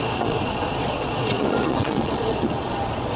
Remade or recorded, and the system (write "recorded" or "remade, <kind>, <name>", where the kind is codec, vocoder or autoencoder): remade, vocoder, Vocos